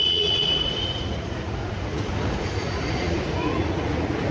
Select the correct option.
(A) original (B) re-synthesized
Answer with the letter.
B